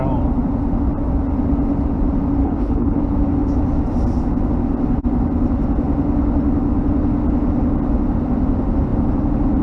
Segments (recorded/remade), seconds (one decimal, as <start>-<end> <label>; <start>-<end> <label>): 0.0-2.4 recorded; 2.4-3.0 remade; 3.0-9.6 recorded